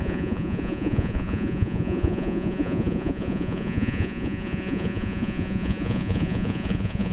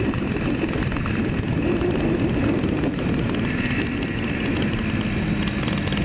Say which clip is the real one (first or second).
second